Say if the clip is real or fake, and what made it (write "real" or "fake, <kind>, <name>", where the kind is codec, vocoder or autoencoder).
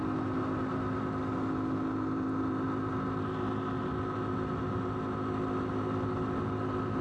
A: real